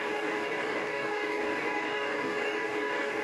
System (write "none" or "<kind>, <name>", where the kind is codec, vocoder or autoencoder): codec, DAC